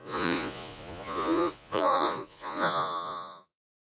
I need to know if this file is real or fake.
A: fake